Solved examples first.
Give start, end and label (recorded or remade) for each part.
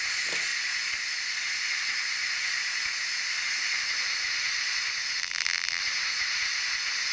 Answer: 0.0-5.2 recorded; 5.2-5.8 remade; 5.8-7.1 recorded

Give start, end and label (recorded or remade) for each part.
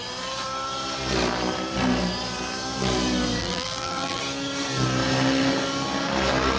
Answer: 0.0-3.4 recorded; 3.4-4.2 remade; 4.2-6.6 recorded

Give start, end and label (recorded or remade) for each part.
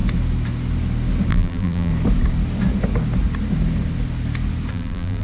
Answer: 0.0-1.3 recorded; 1.3-1.9 remade; 1.9-4.7 recorded; 4.7-5.2 remade